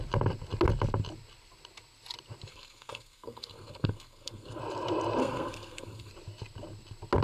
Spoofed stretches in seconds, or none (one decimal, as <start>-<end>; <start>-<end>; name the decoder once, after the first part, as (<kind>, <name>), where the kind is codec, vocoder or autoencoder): 2.5-4.6 (codec, SNAC); 5.2-6.1